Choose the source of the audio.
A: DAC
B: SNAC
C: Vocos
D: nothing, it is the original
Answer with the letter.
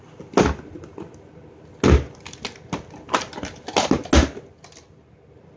D